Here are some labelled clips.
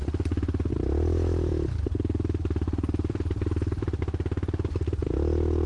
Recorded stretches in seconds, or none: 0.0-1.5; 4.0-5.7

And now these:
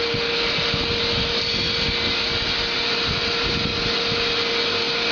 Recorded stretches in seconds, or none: 3.7-4.5

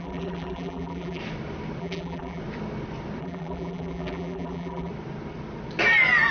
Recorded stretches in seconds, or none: 1.2-1.8; 2.4-3.2; 4.9-6.3

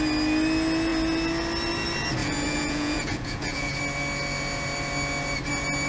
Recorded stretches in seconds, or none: 0.0-2.2; 3.8-5.9

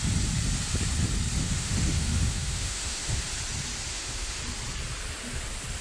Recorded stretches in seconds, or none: 0.0-1.4; 3.2-3.9; 4.4-5.8

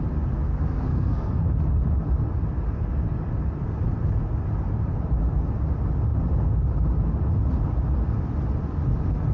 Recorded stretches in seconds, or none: 0.0-0.5; 1.4-9.3

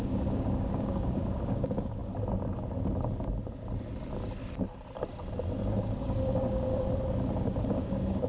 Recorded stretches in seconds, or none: 2.0-6.0; 6.7-7.7